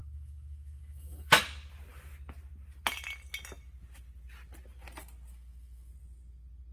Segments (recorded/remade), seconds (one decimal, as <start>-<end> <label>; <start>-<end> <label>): 0.0-1.4 remade; 1.4-5.3 recorded; 5.3-5.9 remade; 5.9-6.7 recorded